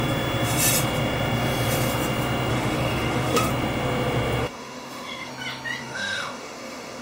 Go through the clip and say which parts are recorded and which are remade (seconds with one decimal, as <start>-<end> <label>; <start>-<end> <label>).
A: 0.0-2.5 recorded; 2.5-3.5 remade; 3.5-4.4 recorded; 4.4-5.3 remade; 5.3-5.8 recorded; 5.8-7.0 remade